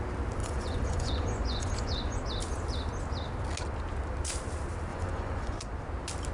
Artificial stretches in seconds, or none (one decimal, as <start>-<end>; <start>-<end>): 0.4-2.2; 4.9-5.6